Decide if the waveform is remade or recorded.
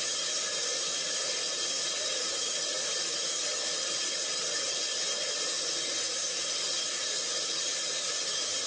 recorded